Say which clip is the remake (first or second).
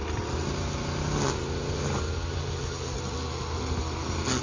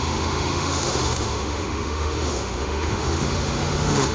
second